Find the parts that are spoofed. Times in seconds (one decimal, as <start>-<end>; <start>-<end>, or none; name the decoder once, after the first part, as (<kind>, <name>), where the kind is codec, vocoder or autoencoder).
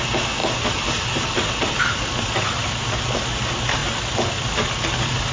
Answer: 0.4-2.7 (vocoder, BigVGAN v2)